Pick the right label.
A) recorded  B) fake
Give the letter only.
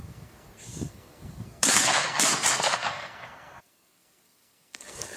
B